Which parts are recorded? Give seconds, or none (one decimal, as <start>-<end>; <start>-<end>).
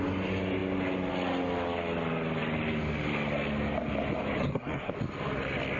0.0-4.4; 4.9-5.8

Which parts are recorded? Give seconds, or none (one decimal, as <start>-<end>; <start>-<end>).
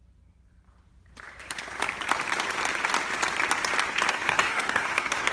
0.0-4.1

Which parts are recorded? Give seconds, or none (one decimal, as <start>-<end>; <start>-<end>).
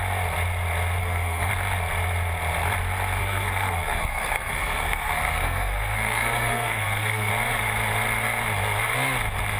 0.0-1.0; 1.5-3.2; 7.3-9.6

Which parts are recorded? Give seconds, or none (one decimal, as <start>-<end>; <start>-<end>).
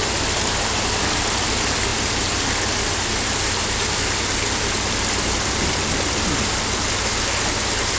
0.0-8.0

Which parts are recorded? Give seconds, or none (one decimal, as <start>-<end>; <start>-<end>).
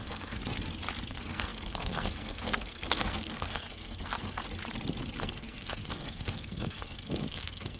0.4-1.1; 4.4-5.2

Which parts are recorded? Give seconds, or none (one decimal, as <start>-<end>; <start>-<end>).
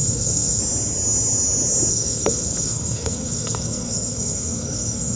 0.6-1.9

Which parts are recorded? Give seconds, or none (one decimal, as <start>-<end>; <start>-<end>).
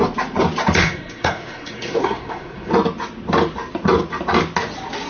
0.0-0.8; 2.7-5.1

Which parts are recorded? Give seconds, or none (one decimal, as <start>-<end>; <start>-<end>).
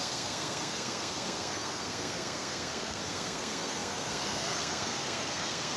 none